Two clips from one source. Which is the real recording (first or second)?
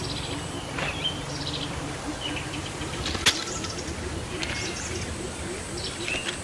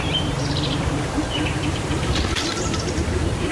first